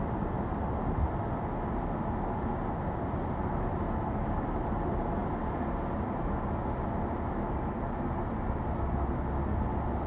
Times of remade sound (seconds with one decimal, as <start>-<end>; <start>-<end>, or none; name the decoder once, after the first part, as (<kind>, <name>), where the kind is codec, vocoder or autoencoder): none